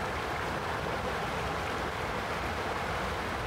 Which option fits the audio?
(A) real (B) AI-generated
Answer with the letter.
A